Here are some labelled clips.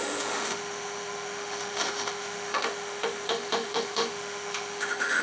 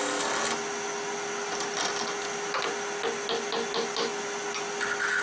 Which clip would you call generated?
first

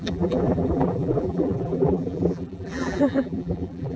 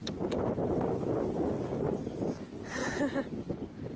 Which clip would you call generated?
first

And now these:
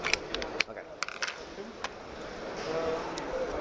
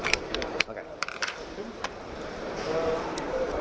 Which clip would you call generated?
second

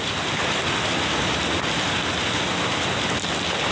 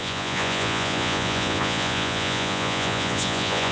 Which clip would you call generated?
second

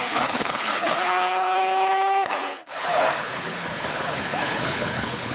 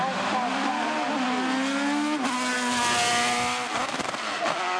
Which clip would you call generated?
first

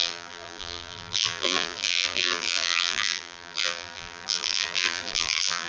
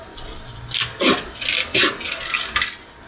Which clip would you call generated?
first